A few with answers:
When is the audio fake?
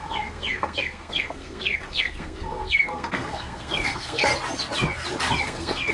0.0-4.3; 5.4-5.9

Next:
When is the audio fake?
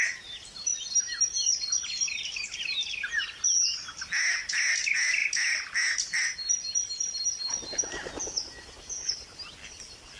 none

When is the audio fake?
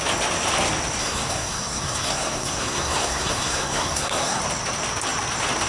1.0-4.4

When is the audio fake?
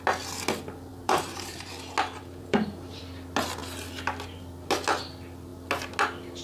0.9-1.7; 2.2-3.0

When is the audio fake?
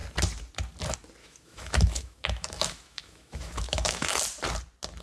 1.2-4.2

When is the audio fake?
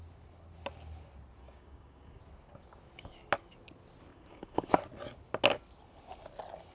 1.4-2.2; 4.1-4.7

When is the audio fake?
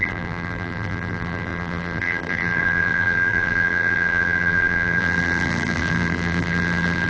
0.0-7.1